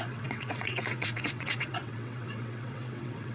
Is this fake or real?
fake